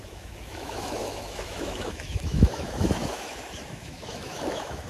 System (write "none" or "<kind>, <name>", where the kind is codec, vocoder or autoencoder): autoencoder, DAC-VAE